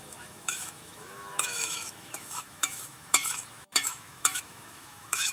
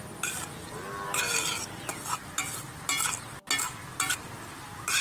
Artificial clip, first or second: first